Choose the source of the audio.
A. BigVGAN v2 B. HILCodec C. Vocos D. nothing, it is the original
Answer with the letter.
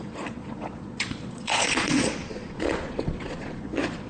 C